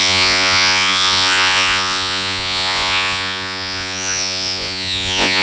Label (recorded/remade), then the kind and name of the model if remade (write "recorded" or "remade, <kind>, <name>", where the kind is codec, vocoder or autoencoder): remade, vocoder, Vocos